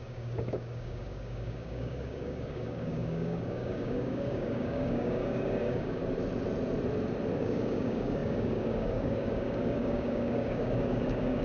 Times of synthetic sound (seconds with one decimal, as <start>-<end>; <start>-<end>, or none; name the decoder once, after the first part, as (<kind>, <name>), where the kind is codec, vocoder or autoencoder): 0.0-6.0 (codec, DAC); 7.4-11.4